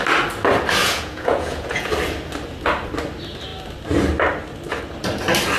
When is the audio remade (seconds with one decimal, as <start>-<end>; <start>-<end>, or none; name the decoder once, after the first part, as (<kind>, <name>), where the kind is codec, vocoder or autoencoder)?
0.8-1.9 (vocoder, Vocos)